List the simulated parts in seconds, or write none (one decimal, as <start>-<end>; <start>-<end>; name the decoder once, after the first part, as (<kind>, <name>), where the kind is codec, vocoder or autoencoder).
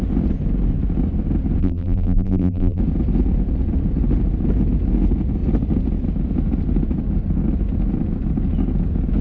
1.6-2.8 (vocoder, BigVGAN v2)